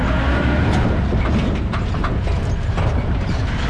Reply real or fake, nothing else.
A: real